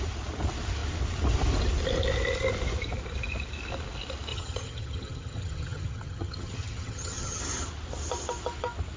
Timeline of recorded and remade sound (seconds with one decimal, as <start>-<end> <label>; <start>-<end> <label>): 0.0-4.3 recorded; 4.3-7.4 remade; 7.4-9.0 recorded